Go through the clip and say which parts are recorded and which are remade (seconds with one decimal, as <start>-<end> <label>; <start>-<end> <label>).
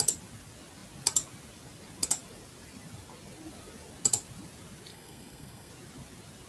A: 0.0-4.9 recorded; 4.9-5.7 remade; 5.7-6.5 recorded